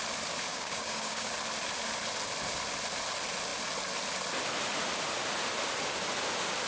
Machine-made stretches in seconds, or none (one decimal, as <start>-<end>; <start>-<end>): 0.5-1.3